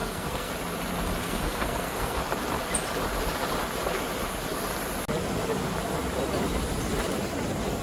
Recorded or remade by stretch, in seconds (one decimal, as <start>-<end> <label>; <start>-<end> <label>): 0.0-0.5 remade; 0.5-1.2 recorded; 1.2-2.2 remade; 2.2-7.8 recorded